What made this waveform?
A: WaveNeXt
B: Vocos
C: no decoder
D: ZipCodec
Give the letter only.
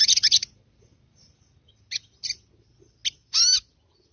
C